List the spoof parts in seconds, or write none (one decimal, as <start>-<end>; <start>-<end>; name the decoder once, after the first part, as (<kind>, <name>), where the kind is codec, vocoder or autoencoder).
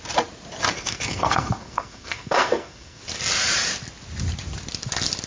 0.7-3.0 (codec, SNAC)